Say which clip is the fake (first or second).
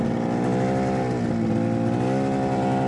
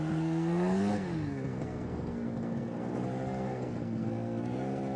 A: second